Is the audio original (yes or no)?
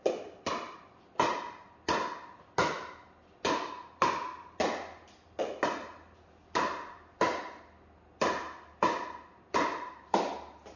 yes